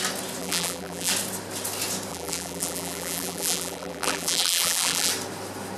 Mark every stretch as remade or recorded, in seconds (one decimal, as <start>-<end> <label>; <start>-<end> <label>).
0.0-0.4 recorded; 0.4-1.1 remade; 1.1-2.1 recorded; 2.1-5.1 remade; 5.1-5.8 recorded